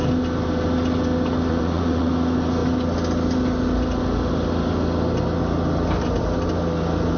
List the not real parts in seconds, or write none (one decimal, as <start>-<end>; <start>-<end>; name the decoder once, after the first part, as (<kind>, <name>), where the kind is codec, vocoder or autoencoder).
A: 1.5-2.1 (vocoder, Vocos)